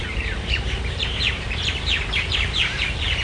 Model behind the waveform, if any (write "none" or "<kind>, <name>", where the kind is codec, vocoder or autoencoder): vocoder, BigVGAN v2